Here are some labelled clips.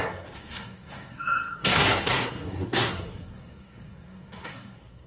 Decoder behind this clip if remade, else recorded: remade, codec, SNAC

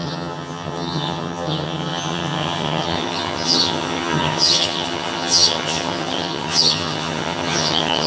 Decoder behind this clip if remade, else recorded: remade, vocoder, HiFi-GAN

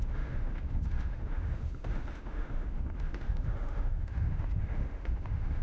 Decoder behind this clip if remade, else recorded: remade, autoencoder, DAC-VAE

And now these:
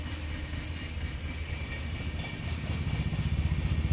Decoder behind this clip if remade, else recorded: recorded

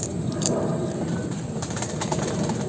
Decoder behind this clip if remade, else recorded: remade, vocoder, BigVGAN v2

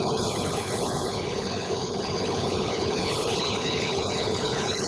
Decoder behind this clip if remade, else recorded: remade, codec, HILCodec